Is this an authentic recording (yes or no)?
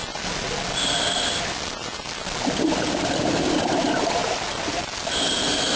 yes